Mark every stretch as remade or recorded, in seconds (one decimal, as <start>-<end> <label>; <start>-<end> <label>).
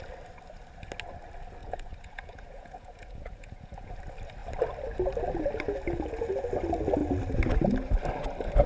0.0-1.6 recorded; 1.6-3.9 remade; 3.9-8.7 recorded